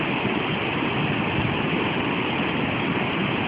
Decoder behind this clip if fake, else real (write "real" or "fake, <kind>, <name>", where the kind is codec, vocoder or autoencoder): real